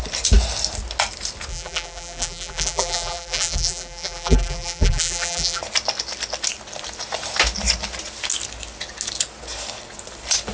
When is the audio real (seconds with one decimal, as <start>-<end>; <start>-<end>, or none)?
0.0-1.5; 5.6-10.5